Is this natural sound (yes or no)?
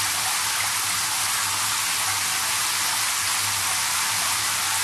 yes